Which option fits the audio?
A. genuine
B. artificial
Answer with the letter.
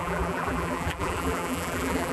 B